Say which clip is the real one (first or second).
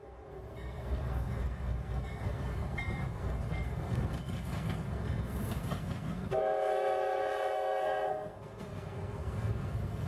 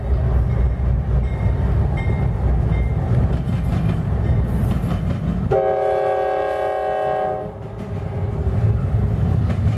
second